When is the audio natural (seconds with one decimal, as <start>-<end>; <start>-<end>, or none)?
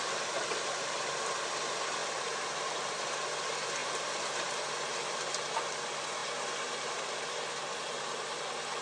0.5-2.0; 3.0-3.8; 4.5-8.8